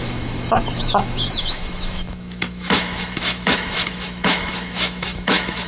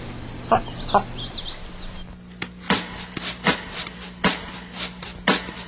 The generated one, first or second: first